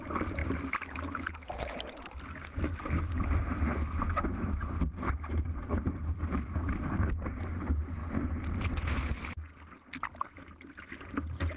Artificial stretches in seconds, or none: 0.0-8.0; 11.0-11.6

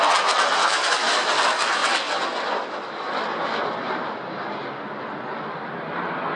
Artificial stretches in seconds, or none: 0.6-1.3

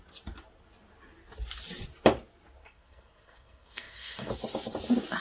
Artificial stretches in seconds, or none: 2.6-4.3

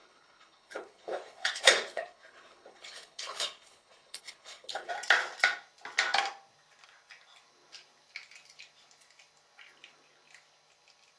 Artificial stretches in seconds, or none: 0.0-4.9

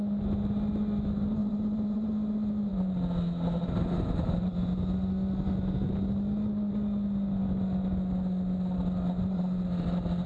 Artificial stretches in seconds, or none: 1.4-2.1

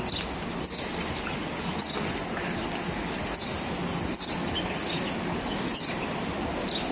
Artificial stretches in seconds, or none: none

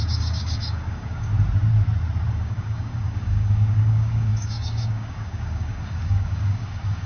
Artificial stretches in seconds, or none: 0.0-1.3; 2.3-7.1